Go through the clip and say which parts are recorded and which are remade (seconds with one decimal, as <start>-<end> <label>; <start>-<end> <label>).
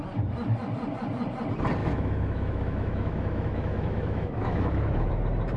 0.0-1.8 recorded; 1.8-5.1 remade; 5.1-5.6 recorded